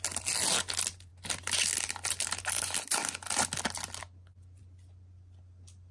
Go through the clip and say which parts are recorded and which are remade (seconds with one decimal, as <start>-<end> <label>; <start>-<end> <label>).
0.0-5.9 recorded